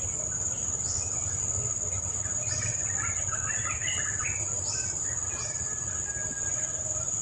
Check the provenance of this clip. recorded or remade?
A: recorded